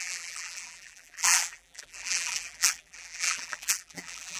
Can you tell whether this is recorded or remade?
remade